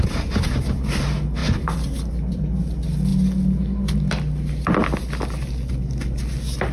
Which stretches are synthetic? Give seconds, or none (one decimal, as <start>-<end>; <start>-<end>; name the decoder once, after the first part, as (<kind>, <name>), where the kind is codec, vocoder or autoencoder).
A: none